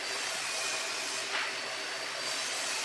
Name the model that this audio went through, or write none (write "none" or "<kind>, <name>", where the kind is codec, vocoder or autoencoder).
none